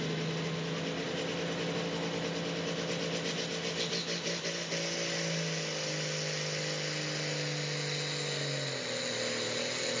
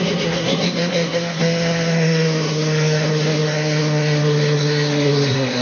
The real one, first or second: first